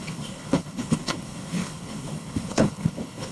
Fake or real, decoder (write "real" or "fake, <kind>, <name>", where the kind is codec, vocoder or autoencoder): fake, codec, HILCodec